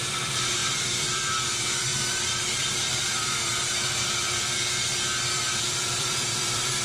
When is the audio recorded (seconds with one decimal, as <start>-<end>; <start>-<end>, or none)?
none